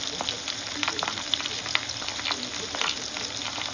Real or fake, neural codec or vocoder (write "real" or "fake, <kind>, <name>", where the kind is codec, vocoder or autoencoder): real